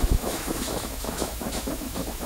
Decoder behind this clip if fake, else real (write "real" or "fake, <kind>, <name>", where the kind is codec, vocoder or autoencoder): fake, autoencoder, DAC-VAE